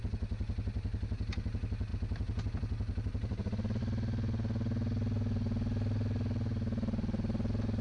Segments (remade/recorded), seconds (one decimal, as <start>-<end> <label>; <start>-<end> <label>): 0.0-7.8 recorded